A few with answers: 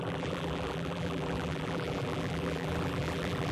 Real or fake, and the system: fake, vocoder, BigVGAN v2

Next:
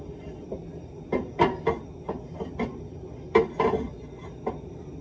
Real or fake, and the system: real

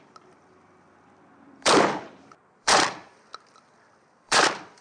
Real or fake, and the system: fake, vocoder, BigVGAN v2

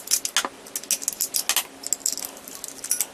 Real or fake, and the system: real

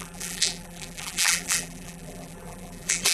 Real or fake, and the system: fake, vocoder, BigVGAN v2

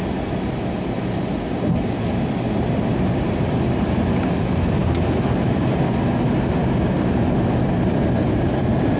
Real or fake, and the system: real